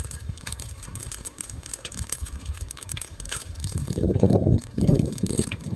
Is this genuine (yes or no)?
no